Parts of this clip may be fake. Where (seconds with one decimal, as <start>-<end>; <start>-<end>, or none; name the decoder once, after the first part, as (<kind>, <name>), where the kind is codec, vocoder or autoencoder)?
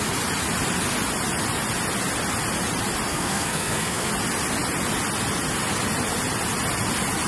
3.1-4.1 (codec, SNAC)